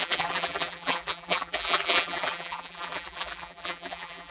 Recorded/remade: remade